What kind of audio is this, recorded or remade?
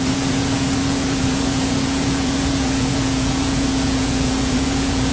remade